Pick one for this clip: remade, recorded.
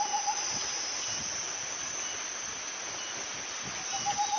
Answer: recorded